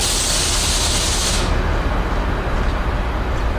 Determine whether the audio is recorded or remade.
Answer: recorded